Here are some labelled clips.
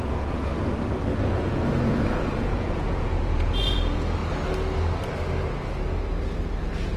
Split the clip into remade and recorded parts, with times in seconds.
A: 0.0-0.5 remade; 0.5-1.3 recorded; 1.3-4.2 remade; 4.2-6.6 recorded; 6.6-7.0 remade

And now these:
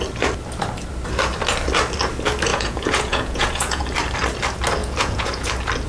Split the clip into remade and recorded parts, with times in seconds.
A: 0.0-2.5 recorded; 2.5-3.8 remade; 3.8-4.8 recorded; 4.8-5.5 remade; 5.5-5.9 recorded

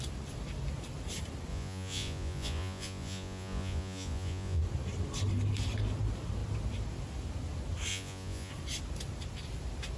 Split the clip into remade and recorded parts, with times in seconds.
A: 0.0-1.5 recorded; 1.5-4.6 remade; 4.6-7.9 recorded; 7.9-8.5 remade; 8.5-10.0 recorded